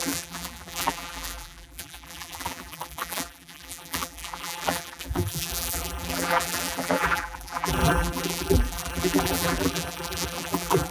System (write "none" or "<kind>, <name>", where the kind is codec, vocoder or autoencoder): vocoder, BigVGAN v2